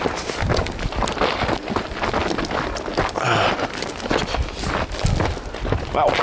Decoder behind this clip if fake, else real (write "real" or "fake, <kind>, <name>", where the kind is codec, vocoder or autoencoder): real